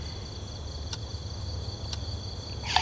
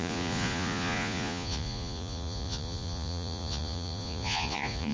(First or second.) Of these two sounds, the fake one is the second